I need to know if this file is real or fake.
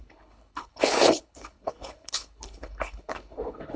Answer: fake